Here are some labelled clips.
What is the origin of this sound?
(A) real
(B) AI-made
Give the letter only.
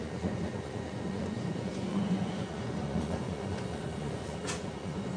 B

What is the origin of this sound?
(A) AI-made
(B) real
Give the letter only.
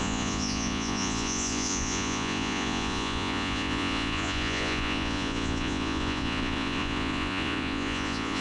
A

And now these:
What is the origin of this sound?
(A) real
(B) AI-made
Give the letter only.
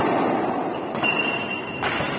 A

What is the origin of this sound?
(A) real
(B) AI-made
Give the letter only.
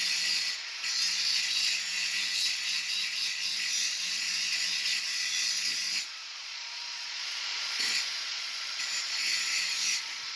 B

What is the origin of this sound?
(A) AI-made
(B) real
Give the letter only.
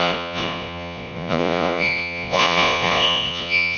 A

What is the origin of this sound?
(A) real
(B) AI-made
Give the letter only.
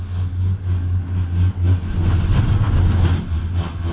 A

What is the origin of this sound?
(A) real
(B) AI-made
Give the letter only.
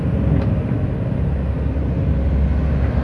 A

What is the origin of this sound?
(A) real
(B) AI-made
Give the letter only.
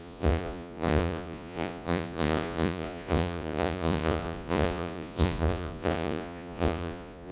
B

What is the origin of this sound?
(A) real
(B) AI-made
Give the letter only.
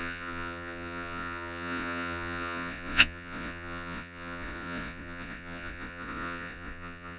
B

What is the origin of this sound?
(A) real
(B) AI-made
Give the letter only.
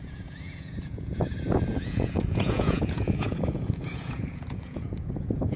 B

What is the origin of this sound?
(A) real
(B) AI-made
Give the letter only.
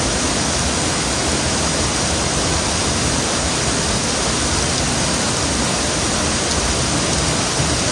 A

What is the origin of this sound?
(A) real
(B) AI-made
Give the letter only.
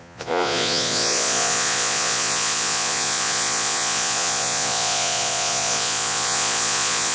B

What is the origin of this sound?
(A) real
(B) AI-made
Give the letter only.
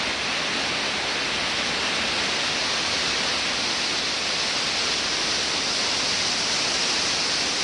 A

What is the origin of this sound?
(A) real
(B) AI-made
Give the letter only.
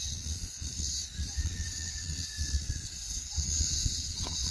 B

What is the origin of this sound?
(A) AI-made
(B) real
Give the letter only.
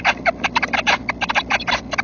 B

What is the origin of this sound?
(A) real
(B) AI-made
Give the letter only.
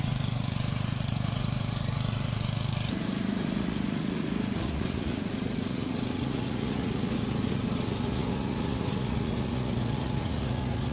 B